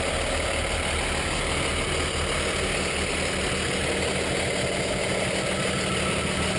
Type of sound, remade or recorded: recorded